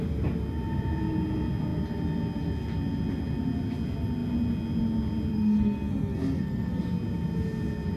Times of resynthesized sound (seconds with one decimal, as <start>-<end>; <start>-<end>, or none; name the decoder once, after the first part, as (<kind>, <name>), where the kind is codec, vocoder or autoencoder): 5.3-6.8 (codec, SNAC)